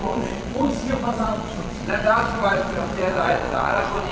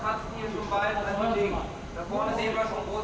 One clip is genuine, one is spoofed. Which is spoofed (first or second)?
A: first